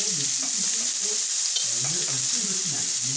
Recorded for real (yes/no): yes